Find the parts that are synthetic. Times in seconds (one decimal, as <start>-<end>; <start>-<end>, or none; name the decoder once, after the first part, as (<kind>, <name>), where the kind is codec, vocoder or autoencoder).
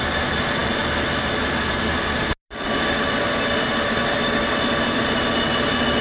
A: none